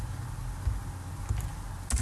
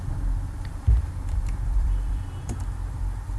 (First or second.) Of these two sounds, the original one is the first